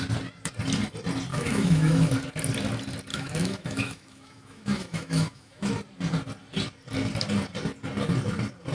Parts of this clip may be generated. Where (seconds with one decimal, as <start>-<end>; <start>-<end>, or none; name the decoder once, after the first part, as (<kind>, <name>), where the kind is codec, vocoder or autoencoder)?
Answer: 1.3-2.1 (autoencoder, DAC-VAE); 3.1-5.7